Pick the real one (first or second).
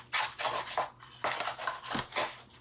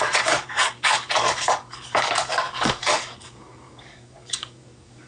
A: first